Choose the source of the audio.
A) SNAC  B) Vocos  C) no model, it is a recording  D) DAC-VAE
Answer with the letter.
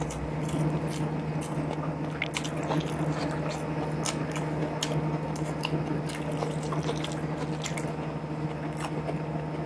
C